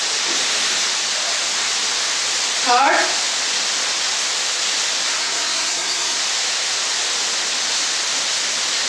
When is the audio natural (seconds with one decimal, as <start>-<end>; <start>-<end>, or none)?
0.0-5.2; 6.2-8.9